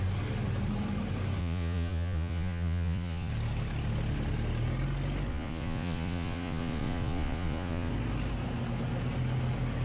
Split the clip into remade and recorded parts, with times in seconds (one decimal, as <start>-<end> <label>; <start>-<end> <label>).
0.0-1.4 recorded; 1.4-3.3 remade; 3.3-5.3 recorded; 5.3-7.9 remade; 7.9-9.8 recorded